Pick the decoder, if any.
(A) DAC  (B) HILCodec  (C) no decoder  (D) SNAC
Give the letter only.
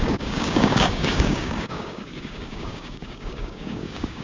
A